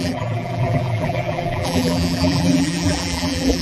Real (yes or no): no